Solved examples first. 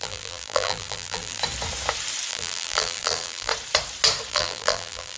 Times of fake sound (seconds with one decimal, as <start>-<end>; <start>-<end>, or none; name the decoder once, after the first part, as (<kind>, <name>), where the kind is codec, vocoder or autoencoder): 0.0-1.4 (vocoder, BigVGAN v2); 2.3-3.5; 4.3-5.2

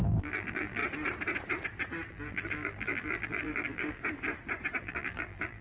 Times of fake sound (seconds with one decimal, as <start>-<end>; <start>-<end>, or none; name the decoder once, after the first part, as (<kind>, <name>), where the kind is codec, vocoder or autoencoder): 0.0-0.8 (vocoder, BigVGAN v2); 2.1-4.0; 4.8-5.6

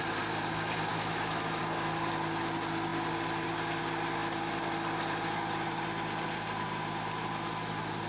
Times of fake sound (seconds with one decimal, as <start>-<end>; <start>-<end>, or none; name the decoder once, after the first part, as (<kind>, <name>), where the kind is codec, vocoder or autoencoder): 0.9-1.6 (autoencoder, DAC-VAE)